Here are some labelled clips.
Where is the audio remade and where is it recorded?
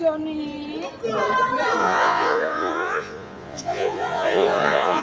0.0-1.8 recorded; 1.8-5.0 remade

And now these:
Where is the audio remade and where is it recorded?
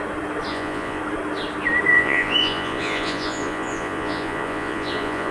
0.0-0.5 recorded; 0.5-1.0 remade; 1.0-1.9 recorded; 1.9-5.3 remade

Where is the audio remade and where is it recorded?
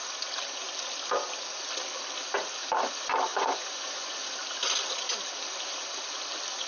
0.0-3.3 recorded; 3.3-4.3 remade; 4.3-6.7 recorded